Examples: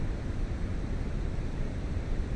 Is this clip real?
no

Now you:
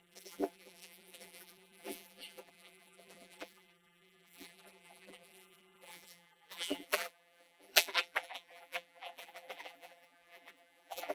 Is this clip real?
no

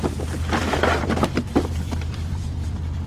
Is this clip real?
no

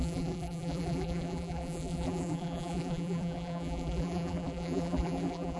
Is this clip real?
no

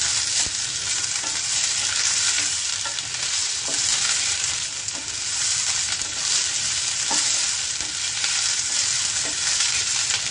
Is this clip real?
yes